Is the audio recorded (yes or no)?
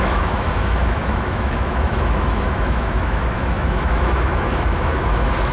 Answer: no